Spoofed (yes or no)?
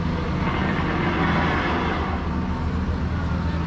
no